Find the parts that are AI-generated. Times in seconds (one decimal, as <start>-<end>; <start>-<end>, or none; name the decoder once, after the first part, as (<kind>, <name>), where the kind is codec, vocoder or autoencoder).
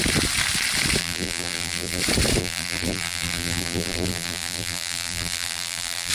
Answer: 1.0-2.0 (vocoder, BigVGAN v2); 2.4-6.1